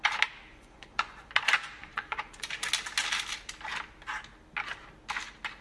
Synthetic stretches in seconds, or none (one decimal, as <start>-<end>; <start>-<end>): 0.5-1.3; 1.8-2.5